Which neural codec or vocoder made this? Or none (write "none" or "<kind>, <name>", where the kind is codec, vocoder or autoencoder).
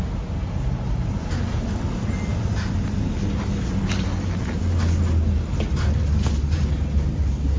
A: none